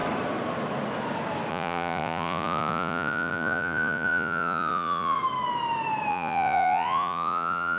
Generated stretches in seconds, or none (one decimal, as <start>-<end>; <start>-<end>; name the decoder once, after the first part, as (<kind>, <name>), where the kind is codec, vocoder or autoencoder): 1.5-5.2 (vocoder, Vocos); 6.1-7.8